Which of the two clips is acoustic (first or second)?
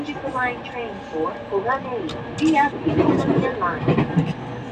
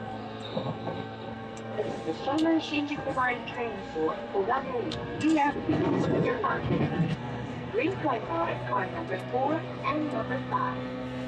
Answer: first